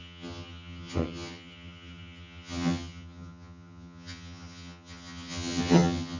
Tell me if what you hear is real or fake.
fake